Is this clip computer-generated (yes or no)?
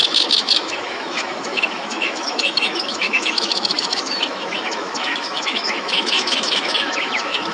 yes